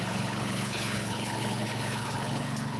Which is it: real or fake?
fake